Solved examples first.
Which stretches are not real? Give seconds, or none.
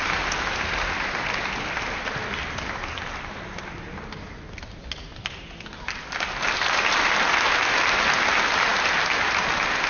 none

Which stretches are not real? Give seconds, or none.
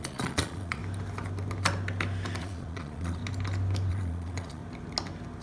0.0-0.8 (vocoder, Vocos); 2.4-3.2; 3.9-4.6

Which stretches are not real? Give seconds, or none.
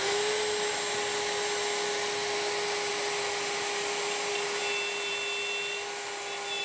none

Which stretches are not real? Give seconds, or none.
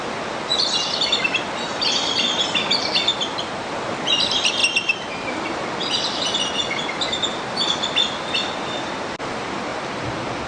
none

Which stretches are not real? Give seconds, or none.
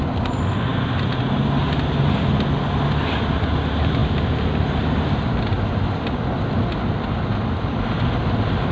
none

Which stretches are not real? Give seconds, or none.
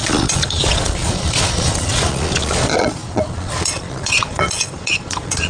0.0-5.5 (vocoder, Vocos)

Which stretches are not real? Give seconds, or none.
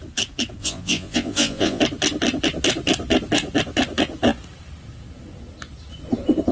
0.6-1.8 (vocoder, Vocos)